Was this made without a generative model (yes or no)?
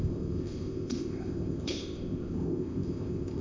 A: no